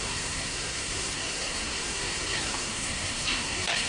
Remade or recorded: remade